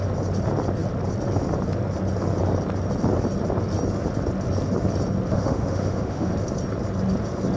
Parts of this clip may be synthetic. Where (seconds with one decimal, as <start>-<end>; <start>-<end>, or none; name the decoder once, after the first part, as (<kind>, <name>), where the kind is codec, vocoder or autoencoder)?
5.3-6.3 (autoencoder, DAC-VAE)